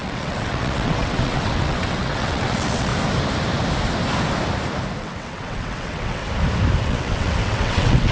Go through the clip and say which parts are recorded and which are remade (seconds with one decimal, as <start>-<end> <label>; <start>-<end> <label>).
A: 0.0-2.9 remade; 2.9-5.0 recorded; 5.0-6.2 remade; 6.2-6.8 recorded; 6.8-8.1 remade